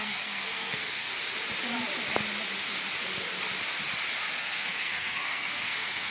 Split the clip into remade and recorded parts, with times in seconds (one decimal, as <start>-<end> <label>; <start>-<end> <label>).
0.0-1.1 remade; 1.1-4.4 recorded; 4.4-6.1 remade